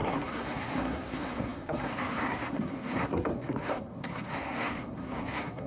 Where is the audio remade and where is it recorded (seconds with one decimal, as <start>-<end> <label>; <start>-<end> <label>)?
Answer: 0.0-5.7 remade

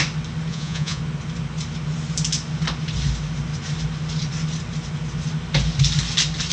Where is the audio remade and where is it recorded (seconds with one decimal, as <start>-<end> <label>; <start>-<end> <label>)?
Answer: 0.0-0.5 recorded; 0.5-1.0 remade; 1.0-6.5 recorded

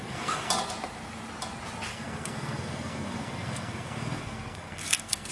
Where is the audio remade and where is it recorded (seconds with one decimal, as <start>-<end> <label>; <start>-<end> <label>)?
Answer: 0.0-0.5 remade; 0.5-1.9 recorded; 1.9-5.3 remade

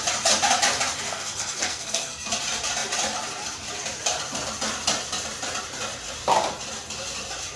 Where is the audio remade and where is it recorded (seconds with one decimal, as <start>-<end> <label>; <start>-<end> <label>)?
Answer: 0.0-1.1 recorded; 1.1-2.3 remade; 2.3-7.6 recorded

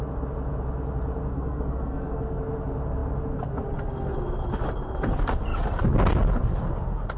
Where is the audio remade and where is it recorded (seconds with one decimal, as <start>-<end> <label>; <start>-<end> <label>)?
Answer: 0.0-1.3 recorded; 1.3-2.4 remade; 2.4-7.2 recorded

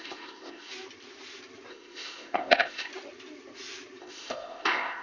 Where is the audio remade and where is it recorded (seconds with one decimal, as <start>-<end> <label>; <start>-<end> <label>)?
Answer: 0.0-0.7 remade; 0.7-1.7 recorded; 1.7-2.9 remade; 2.9-4.0 recorded; 4.0-5.0 remade